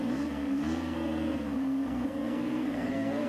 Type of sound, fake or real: fake